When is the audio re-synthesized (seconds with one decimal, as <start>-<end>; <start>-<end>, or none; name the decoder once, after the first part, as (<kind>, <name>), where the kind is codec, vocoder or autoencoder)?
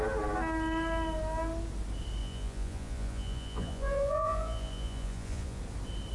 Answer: 2.2-5.6 (vocoder, Vocos)